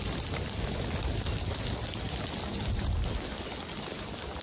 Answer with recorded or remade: recorded